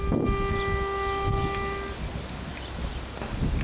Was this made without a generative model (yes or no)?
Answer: yes